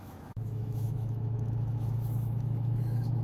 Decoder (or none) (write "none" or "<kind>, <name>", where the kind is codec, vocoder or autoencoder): autoencoder, DAC-VAE